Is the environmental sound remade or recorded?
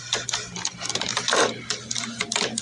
remade